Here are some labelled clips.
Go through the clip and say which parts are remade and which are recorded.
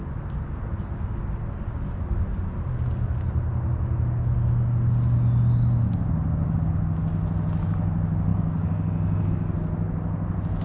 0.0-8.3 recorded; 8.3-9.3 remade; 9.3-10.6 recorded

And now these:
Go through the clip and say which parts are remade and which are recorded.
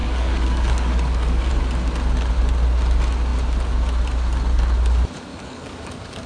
0.0-1.5 remade; 1.5-5.3 recorded; 5.3-6.3 remade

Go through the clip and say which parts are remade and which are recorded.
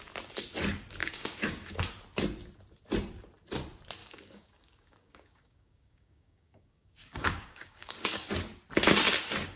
0.0-1.0 recorded; 1.0-1.8 remade; 1.8-4.0 recorded; 4.0-8.3 remade; 8.3-9.6 recorded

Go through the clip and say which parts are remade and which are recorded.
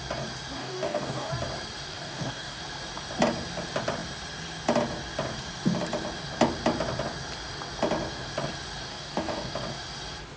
0.0-0.6 recorded; 0.6-1.3 remade; 1.3-1.9 recorded; 1.9-2.6 remade; 2.6-8.9 recorded; 8.9-9.5 remade; 9.5-10.4 recorded